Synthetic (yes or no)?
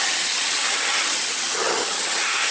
yes